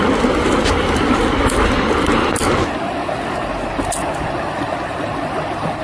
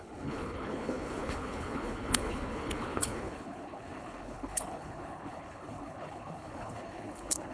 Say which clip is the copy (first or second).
second